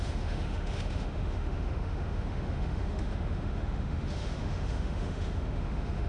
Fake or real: fake